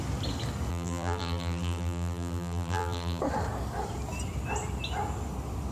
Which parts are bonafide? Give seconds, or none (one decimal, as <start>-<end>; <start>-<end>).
0.0-0.7; 3.2-5.7